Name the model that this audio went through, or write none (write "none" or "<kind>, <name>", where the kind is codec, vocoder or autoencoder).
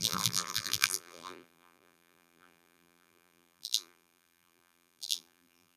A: vocoder, BigVGAN v2